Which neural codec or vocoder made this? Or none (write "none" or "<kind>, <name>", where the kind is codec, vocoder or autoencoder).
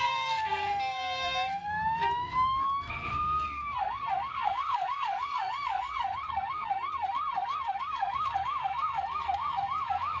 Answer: codec, SNAC